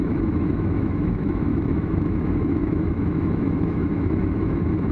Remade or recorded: remade